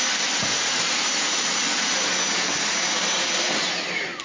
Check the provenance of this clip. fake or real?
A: real